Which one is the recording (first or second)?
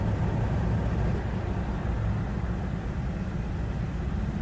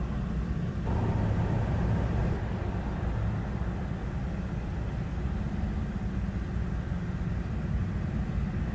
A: second